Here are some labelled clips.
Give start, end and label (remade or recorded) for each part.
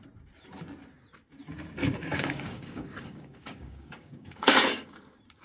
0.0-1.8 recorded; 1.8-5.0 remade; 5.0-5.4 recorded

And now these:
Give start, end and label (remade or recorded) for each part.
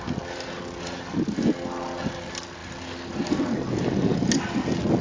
0.0-5.0 recorded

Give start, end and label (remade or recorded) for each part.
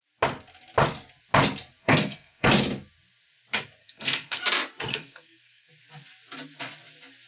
0.0-1.8 recorded; 1.8-2.5 remade; 2.5-3.8 recorded; 3.8-4.4 remade; 4.4-4.9 recorded; 4.9-5.7 remade; 5.7-7.3 recorded